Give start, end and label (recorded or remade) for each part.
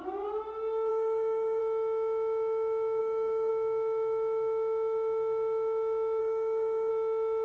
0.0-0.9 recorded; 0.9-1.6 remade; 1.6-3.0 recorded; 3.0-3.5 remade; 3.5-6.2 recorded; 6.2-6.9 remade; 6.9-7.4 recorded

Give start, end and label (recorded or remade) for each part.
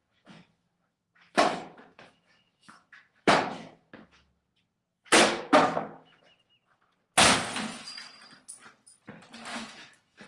0.0-4.3 remade; 4.3-4.9 recorded; 4.9-6.2 remade; 6.2-9.5 recorded; 9.5-10.3 remade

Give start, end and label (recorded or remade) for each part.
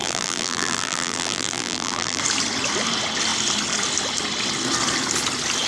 0.0-2.2 remade; 2.2-5.7 recorded